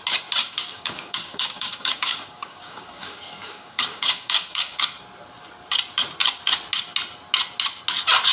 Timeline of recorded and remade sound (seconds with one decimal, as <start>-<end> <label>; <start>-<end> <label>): 0.0-0.4 recorded; 0.4-4.8 remade; 4.8-8.3 recorded